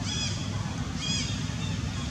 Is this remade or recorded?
recorded